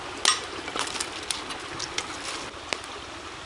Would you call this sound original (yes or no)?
yes